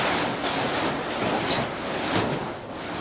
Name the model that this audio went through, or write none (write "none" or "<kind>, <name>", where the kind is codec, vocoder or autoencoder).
none